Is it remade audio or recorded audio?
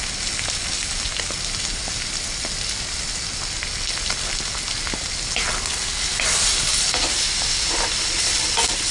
recorded